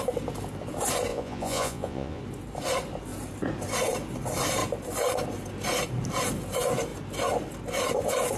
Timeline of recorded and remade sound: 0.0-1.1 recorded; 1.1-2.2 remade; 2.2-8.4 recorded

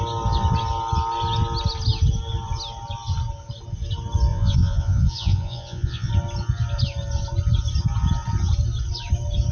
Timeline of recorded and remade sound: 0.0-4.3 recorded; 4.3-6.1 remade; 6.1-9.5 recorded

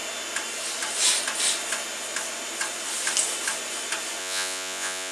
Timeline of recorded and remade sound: 0.0-4.2 recorded; 4.2-5.1 remade

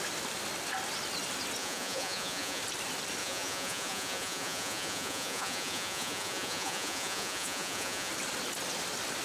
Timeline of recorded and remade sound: 0.0-1.6 recorded; 1.6-2.6 remade; 2.6-3.2 recorded; 3.2-8.1 remade; 8.1-9.2 recorded

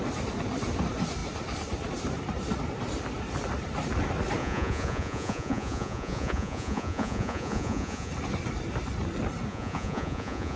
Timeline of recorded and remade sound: 0.0-4.4 recorded; 4.4-8.1 remade; 8.1-9.5 recorded; 9.5-10.6 remade

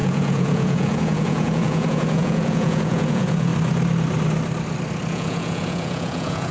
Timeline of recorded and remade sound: 0.0-3.5 remade; 3.5-5.1 recorded; 5.1-6.5 remade